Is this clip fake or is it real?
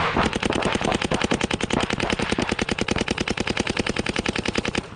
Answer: fake